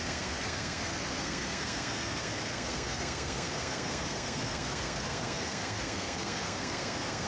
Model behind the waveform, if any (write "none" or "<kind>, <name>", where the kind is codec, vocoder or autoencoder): codec, SNAC